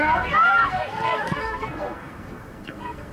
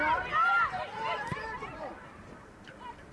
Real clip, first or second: second